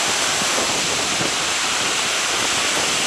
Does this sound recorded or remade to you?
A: recorded